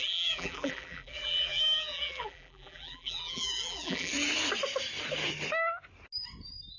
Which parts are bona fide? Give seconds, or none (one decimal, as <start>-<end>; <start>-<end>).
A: 4.1-6.8

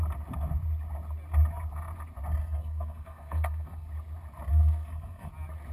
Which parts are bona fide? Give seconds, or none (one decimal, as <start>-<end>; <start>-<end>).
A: 0.0-2.4; 3.9-4.5; 5.3-5.7

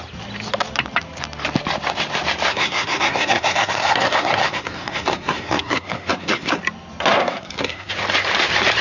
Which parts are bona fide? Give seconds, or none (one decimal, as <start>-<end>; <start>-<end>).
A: 0.0-2.5; 6.6-7.1; 7.9-8.8

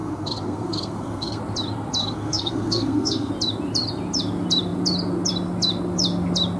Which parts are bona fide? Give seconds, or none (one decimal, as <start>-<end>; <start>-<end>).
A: 1.4-2.0; 3.3-6.6

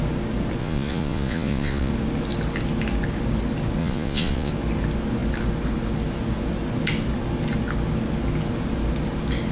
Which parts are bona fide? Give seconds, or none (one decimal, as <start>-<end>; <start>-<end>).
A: 0.0-0.6; 1.9-3.8; 4.5-9.5

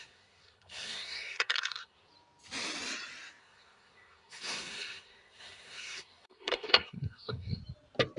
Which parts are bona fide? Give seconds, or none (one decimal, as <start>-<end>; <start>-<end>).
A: 2.1-3.4; 7.6-8.2

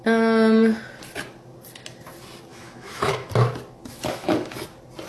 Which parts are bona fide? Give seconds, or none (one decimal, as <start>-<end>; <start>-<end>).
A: 0.0-2.5; 3.3-3.8; 4.5-5.1